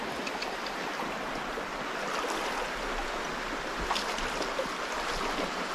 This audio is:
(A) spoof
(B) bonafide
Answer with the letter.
B